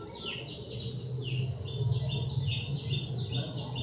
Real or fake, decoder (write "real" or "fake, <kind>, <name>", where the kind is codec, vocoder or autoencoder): real